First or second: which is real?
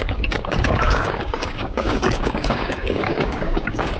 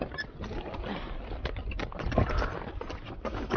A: second